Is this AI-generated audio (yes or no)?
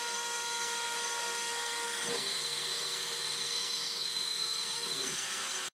yes